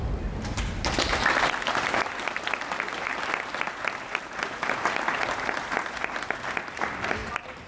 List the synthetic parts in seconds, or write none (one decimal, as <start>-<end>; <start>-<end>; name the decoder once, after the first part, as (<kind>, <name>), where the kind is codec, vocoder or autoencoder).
none